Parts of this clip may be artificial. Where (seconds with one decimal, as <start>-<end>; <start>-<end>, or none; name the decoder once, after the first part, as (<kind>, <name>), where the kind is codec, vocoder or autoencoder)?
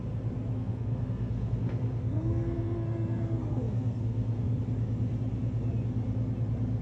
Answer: 0.5-4.6 (codec, SNAC)